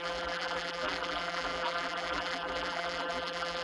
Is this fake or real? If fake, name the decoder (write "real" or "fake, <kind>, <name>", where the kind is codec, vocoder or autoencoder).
fake, vocoder, BigVGAN v2